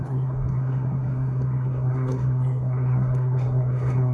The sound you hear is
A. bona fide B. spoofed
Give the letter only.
B